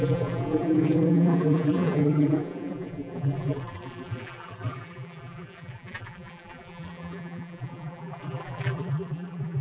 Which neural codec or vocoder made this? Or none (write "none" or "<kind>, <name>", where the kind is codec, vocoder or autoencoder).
vocoder, BigVGAN v2